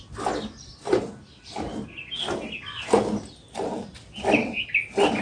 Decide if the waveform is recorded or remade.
recorded